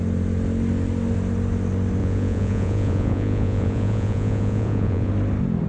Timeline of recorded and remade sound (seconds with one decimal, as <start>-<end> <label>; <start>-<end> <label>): 0.0-2.0 recorded; 2.0-5.1 remade; 5.1-5.7 recorded

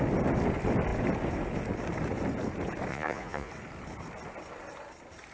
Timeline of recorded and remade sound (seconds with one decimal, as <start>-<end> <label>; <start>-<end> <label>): 0.0-2.9 recorded; 2.9-3.5 remade; 3.5-5.3 recorded

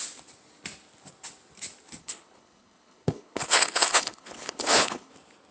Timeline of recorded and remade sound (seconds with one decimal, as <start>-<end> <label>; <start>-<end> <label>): 0.0-2.0 recorded; 2.0-5.1 remade; 5.1-5.5 recorded

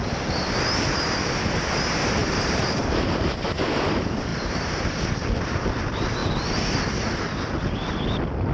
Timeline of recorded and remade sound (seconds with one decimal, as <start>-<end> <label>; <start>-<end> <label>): 0.0-2.2 recorded; 2.2-3.6 remade; 3.6-4.3 recorded; 4.3-5.1 remade; 5.1-8.5 recorded

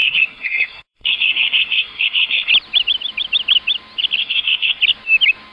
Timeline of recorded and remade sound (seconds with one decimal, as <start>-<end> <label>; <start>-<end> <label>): 0.0-2.5 remade; 2.5-4.2 recorded; 4.2-4.8 remade; 4.8-5.5 recorded